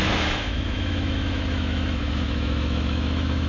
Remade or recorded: remade